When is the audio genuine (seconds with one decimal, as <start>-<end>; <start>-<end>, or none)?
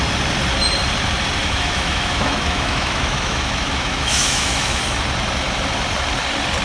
0.0-1.4; 4.8-6.6